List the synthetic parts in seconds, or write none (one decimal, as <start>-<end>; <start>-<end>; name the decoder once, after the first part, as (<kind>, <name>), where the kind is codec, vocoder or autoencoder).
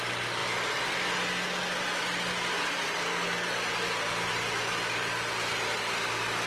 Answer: none